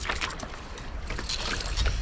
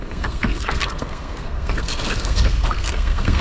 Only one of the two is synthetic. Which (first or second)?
second